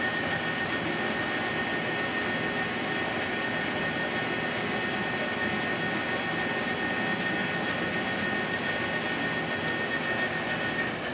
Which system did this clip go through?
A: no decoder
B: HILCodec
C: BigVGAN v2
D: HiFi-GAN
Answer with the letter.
A